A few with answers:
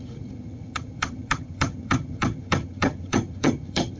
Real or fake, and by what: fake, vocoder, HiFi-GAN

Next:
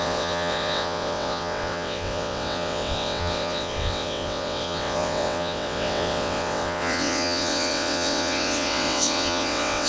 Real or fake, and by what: fake, vocoder, WaveNeXt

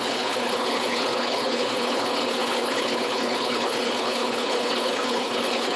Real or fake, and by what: fake, codec, HILCodec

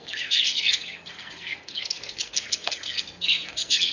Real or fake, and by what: fake, codec, SNAC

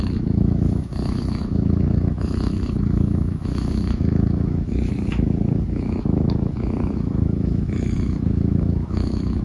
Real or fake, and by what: fake, autoencoder, DAC-VAE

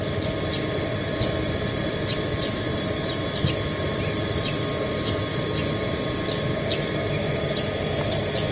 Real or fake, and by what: real